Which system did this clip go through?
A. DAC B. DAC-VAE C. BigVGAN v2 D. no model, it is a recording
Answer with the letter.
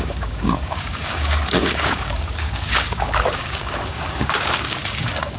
A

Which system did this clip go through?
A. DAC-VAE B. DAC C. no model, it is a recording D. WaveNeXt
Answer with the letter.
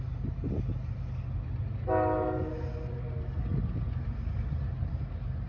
C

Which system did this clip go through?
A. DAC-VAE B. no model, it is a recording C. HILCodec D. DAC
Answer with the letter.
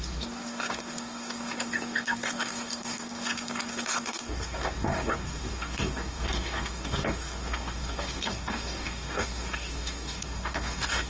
D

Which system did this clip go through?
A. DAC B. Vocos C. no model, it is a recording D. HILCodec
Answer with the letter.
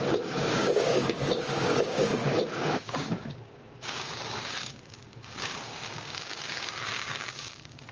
A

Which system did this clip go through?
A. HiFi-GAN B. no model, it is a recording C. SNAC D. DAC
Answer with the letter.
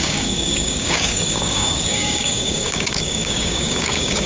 D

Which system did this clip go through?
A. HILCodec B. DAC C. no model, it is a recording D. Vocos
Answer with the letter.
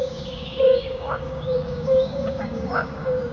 B